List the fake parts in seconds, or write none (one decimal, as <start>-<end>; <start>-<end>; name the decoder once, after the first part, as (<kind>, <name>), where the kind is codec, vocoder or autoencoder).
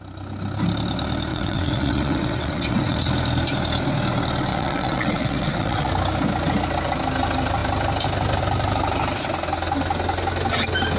1.3-3.1 (vocoder, WaveNeXt); 4.5-5.9